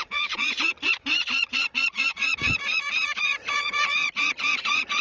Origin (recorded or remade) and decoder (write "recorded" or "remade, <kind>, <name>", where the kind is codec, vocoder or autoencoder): remade, vocoder, Vocos